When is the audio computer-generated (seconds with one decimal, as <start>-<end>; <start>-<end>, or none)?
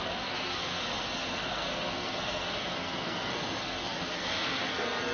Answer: 0.0-5.1